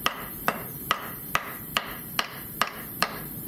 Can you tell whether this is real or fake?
fake